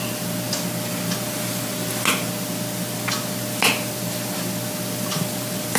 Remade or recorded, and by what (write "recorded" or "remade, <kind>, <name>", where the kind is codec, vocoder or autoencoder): recorded